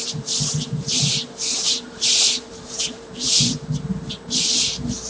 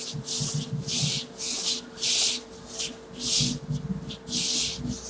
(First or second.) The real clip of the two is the second